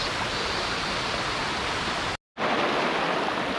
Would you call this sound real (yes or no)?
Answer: yes